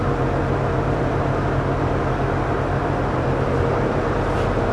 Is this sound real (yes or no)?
no